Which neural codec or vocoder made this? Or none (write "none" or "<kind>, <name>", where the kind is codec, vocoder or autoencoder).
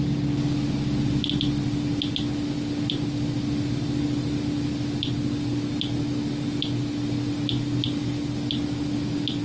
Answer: none